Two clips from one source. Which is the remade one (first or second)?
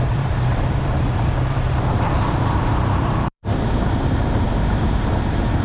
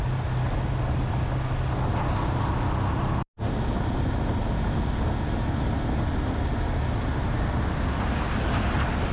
first